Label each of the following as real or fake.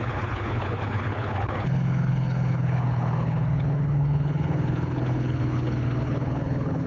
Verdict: fake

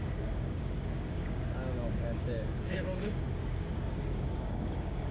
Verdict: fake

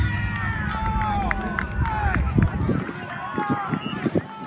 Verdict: real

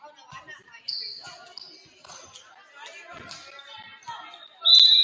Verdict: real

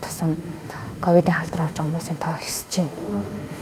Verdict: fake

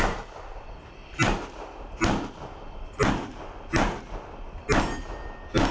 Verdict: real